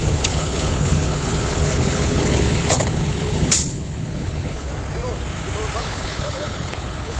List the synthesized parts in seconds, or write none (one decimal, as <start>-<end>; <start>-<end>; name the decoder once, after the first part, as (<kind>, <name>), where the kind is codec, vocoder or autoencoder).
0.0-4.7 (codec, HILCodec); 5.8-7.2